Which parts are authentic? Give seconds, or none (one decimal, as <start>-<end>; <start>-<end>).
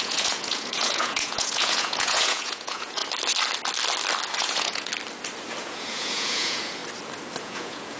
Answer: 3.0-4.4; 4.9-5.6; 6.8-7.4